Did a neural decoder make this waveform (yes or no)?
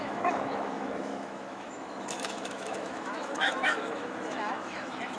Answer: yes